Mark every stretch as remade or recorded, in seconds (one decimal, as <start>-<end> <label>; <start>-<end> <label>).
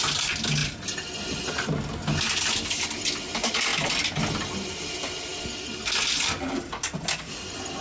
0.0-7.8 recorded